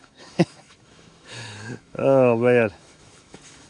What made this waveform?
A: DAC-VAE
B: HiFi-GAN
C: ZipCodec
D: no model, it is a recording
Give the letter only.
A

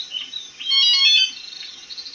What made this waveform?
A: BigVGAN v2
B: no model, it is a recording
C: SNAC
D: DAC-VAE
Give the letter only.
B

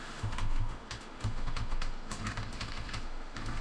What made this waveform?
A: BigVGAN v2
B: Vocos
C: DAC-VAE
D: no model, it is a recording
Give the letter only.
C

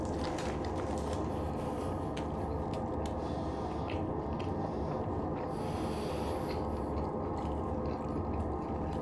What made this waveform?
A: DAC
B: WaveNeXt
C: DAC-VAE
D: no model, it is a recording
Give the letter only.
D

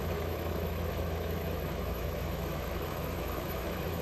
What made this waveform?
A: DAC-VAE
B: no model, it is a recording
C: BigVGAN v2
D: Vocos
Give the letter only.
A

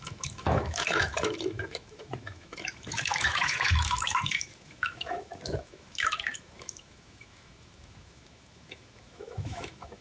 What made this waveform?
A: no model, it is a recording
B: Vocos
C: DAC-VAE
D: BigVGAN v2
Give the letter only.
C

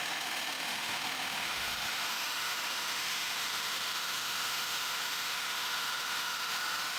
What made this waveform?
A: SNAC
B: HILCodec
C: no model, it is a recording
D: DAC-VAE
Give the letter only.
D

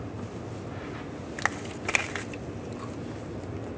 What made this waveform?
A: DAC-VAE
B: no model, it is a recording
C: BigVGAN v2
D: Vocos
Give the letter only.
B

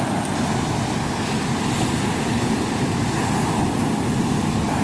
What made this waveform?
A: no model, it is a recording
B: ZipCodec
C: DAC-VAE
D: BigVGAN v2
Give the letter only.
A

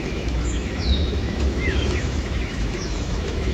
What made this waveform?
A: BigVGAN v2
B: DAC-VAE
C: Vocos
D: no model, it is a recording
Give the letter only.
B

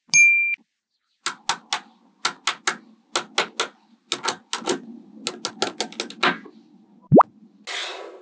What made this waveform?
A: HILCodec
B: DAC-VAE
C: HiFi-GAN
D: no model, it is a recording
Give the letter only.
D